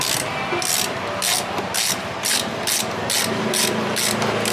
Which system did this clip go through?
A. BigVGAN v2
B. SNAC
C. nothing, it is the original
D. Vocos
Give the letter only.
C